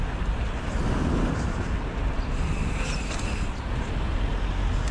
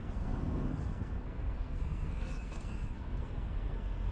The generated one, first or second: second